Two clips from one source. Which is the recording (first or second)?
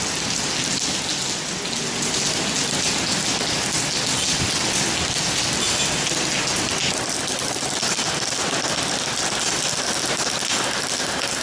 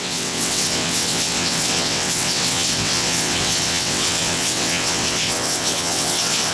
first